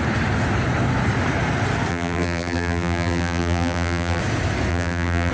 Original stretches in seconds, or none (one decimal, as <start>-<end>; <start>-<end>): 0.0-1.9; 4.2-4.7